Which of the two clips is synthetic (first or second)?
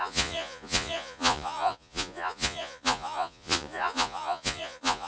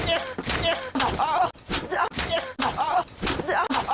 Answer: first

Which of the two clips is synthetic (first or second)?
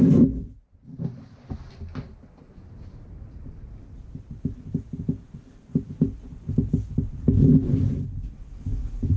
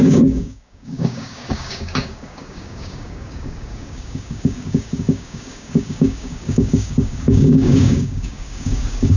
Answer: second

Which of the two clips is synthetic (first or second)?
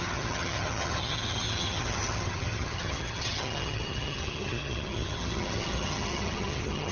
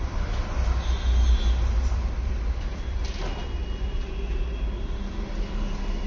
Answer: first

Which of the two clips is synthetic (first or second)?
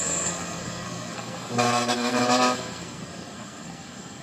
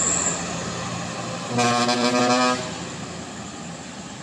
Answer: first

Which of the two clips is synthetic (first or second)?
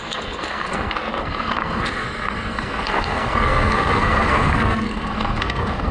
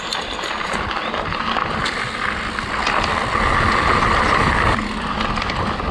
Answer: first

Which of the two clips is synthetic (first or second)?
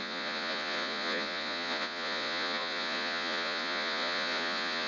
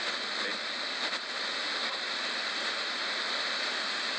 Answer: first